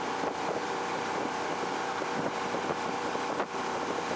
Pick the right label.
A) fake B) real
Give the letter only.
A